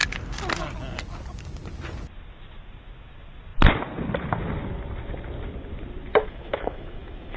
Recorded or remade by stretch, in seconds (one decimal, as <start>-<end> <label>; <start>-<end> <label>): 0.0-6.1 recorded; 6.1-7.4 remade